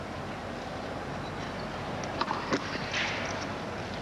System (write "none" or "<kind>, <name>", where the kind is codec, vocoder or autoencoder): none